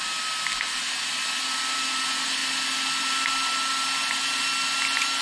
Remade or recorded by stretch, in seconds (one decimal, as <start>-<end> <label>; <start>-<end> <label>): 0.0-5.2 recorded

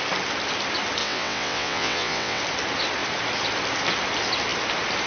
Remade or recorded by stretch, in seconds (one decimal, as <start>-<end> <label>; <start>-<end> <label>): 0.0-1.0 recorded; 1.0-2.4 remade; 2.4-5.1 recorded

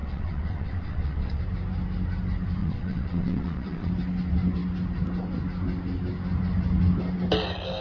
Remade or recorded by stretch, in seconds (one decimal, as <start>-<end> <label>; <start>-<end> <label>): 0.0-1.4 remade; 1.4-2.6 recorded; 2.6-3.9 remade; 3.9-7.8 recorded

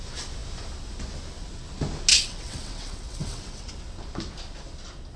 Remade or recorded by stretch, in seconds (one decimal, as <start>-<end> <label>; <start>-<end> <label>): 0.0-2.1 recorded; 2.1-3.7 remade; 3.7-5.2 recorded

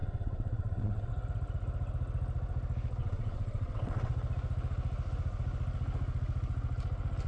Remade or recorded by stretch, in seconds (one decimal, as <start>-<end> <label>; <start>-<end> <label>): 0.0-1.1 remade; 1.1-3.0 recorded; 3.0-4.1 remade; 4.1-7.3 recorded

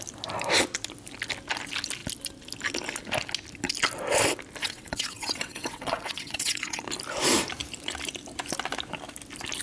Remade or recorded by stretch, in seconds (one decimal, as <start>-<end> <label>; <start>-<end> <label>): 0.0-4.6 recorded; 4.6-6.8 remade; 6.8-9.6 recorded

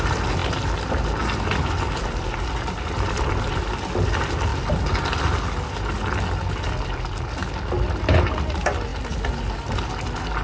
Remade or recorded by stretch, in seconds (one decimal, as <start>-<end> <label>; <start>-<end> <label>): 0.0-10.4 recorded

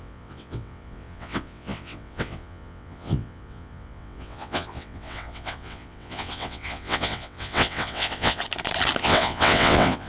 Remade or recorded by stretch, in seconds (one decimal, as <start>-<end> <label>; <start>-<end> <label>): 0.0-8.4 remade; 8.4-9.0 recorded; 9.0-10.1 remade